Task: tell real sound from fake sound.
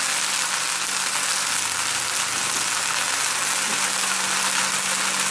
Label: real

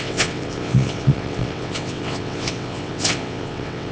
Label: fake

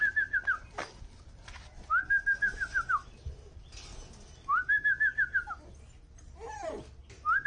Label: real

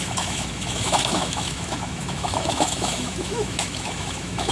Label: fake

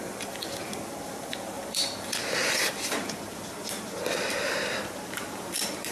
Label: fake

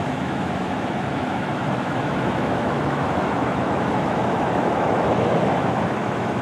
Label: fake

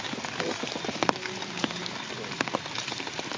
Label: real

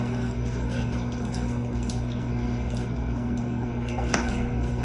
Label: fake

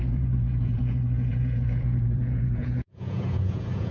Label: fake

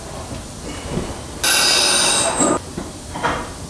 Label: real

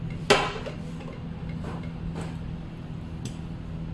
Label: real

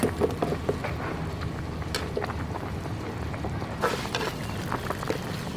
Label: real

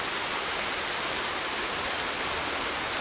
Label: real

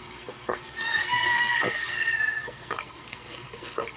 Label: fake